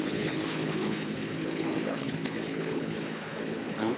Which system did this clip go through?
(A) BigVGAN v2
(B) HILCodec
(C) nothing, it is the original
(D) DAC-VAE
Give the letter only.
B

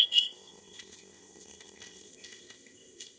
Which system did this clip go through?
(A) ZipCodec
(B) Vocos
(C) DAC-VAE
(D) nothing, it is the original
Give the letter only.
A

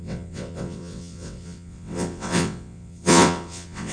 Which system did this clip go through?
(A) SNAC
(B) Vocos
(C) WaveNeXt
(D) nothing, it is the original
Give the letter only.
C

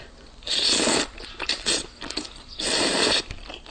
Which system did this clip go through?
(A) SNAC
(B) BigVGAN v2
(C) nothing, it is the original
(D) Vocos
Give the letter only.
B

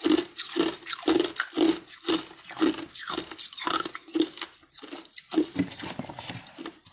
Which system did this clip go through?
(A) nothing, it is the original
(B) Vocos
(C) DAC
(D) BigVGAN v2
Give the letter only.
A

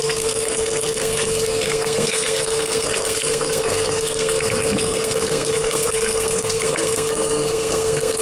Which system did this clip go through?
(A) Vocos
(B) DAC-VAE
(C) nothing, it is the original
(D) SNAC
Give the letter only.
D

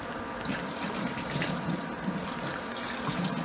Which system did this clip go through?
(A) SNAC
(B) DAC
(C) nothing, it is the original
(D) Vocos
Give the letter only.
C